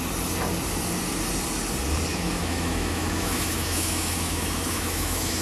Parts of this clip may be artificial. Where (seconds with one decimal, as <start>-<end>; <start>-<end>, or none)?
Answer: 2.1-5.4

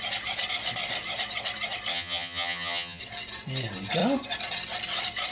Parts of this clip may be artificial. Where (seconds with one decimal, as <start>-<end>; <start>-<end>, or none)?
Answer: 1.9-3.0

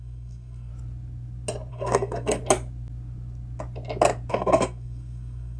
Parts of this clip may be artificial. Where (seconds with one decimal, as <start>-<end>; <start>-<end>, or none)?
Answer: 0.0-0.7; 1.7-2.4; 4.3-5.6

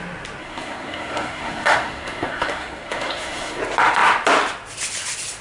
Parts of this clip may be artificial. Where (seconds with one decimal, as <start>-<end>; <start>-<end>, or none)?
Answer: 0.4-3.6

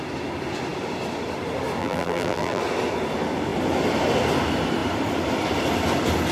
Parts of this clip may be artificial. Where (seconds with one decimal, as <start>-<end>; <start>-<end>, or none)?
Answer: 1.8-2.6